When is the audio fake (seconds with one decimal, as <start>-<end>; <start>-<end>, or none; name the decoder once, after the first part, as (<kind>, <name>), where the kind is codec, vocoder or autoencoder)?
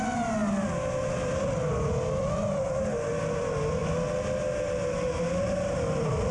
none